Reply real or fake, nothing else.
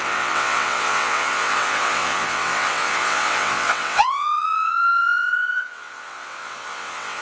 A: fake